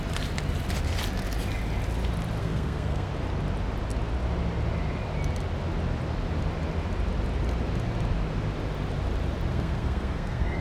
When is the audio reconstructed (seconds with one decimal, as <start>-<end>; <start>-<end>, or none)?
2.4-3.1; 9.5-10.6